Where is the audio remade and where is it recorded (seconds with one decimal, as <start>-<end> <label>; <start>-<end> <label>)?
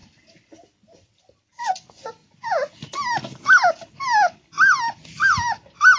0.0-1.7 remade; 1.7-6.0 recorded